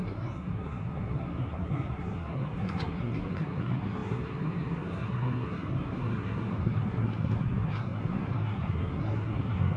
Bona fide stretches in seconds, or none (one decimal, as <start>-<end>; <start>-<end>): none